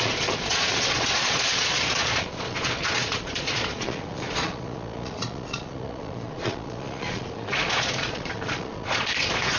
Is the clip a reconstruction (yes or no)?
yes